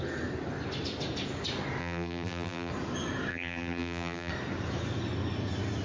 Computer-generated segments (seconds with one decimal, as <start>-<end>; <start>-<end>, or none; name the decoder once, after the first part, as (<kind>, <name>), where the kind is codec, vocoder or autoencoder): 1.8-2.7 (vocoder, BigVGAN v2); 3.3-4.3

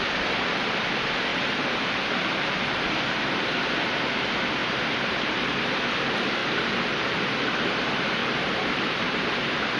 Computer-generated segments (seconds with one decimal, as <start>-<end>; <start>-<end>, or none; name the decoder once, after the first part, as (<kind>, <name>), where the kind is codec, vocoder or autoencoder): 1.3-1.9 (vocoder, BigVGAN v2); 4.6-5.6; 6.4-7.5; 8.2-9.2

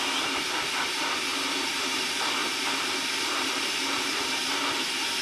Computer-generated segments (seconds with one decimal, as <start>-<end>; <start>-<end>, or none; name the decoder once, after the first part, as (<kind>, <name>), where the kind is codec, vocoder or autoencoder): 1.3-1.8 (vocoder, BigVGAN v2); 2.4-4.1

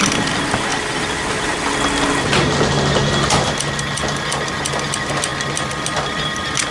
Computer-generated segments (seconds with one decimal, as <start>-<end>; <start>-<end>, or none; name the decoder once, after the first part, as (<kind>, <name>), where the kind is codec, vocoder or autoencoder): 0.0-0.7 (vocoder, BigVGAN v2); 4.7-6.7

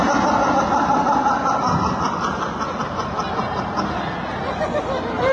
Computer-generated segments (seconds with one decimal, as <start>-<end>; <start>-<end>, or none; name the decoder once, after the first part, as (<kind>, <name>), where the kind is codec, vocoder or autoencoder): none

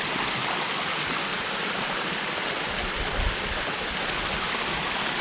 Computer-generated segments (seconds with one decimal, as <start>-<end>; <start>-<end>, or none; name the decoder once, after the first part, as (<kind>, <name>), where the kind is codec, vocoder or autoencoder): 1.3-2.2 (vocoder, BigVGAN v2)